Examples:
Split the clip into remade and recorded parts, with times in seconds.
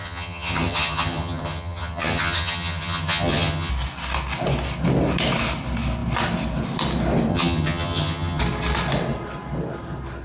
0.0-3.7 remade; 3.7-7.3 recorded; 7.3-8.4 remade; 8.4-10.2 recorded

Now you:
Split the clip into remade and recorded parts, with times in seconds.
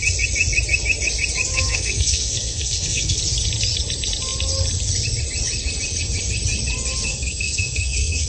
0.0-1.5 recorded; 1.5-3.2 remade; 3.2-7.1 recorded; 7.1-8.3 remade